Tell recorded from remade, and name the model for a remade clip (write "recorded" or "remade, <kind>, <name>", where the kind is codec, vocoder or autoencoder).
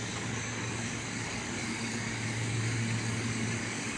remade, codec, DAC